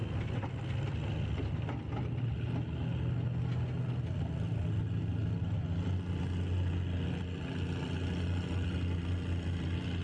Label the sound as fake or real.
real